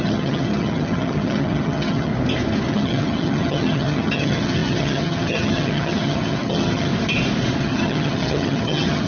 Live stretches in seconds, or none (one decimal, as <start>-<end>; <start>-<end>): 2.1-2.7; 6.9-7.6